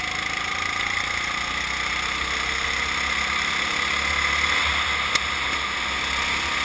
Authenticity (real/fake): real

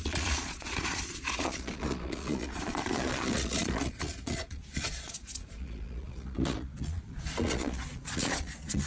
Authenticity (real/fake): fake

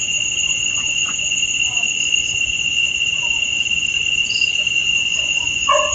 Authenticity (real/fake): fake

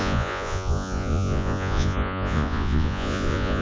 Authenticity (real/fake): fake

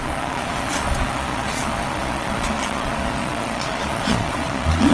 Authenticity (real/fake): fake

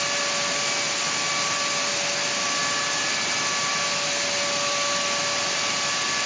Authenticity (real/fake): real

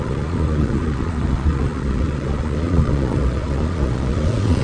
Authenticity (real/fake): fake